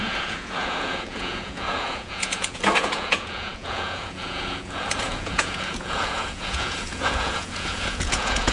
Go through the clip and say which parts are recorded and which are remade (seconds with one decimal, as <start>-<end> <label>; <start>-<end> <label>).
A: 0.0-8.5 remade